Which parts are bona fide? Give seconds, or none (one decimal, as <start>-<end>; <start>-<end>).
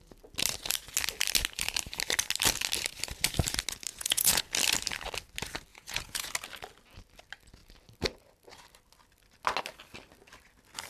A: 0.0-3.9; 4.4-5.7; 6.3-10.9